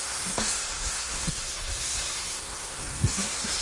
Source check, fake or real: fake